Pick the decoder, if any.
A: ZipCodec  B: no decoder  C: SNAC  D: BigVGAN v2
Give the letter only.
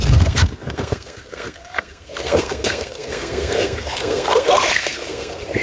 C